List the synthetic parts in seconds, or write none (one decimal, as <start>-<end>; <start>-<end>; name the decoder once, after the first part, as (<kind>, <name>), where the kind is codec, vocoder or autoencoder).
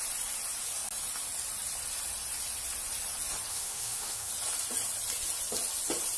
3.5-4.3 (autoencoder, DAC-VAE)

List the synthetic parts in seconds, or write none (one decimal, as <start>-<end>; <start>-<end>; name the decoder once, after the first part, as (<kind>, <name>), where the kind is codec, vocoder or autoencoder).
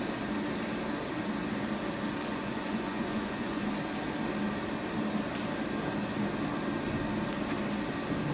2.3-3.6 (vocoder, Vocos)